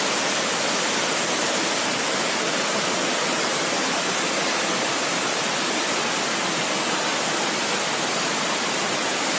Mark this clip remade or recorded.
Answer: recorded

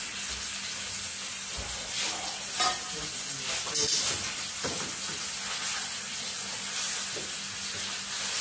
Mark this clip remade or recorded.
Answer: recorded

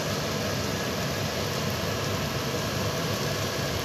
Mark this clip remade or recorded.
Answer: recorded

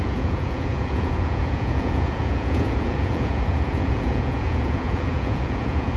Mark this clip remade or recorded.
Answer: remade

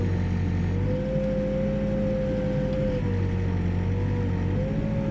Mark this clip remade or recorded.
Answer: recorded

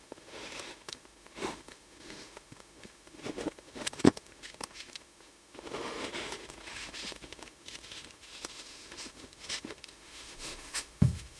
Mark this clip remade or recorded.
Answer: remade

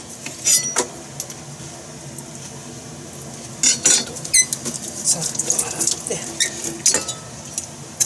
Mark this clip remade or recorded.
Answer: recorded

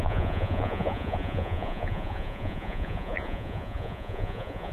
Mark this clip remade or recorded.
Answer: remade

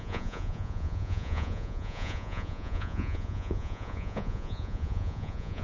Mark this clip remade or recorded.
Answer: remade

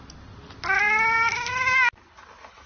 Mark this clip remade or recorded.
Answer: recorded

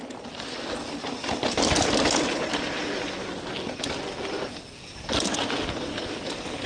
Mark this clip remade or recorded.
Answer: recorded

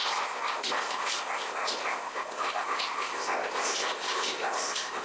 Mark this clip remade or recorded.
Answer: remade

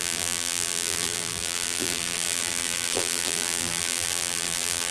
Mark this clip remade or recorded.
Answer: remade